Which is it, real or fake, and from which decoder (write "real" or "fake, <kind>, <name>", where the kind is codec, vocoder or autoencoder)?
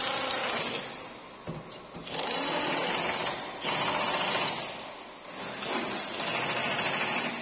real